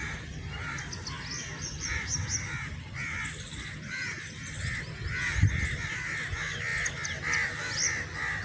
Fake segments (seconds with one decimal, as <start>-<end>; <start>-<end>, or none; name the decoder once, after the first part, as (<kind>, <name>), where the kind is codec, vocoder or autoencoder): none